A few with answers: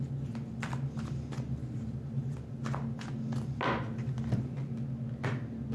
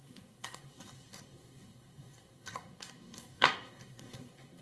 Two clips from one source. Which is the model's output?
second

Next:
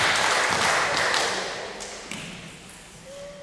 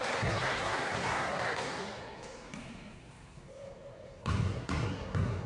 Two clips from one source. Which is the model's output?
second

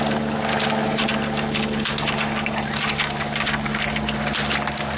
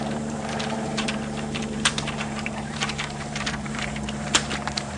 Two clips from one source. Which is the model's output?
second